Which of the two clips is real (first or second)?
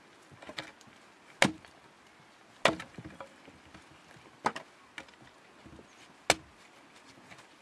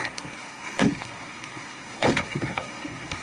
first